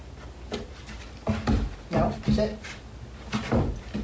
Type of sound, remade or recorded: recorded